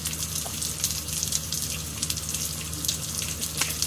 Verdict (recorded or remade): recorded